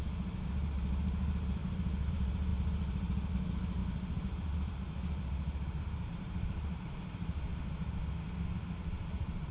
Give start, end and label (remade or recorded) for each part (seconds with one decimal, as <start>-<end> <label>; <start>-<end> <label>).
0.0-1.6 remade; 1.6-2.1 recorded; 2.1-7.5 remade; 7.5-9.1 recorded; 9.1-9.5 remade